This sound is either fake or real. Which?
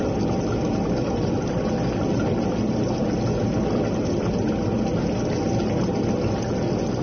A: real